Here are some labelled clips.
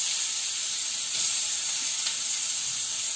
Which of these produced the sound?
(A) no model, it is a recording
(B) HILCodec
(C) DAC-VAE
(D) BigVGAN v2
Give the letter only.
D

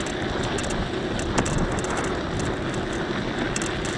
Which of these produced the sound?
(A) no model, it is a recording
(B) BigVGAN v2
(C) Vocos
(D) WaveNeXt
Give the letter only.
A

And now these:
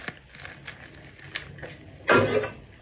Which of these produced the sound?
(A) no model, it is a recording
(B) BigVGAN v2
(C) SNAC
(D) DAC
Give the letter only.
A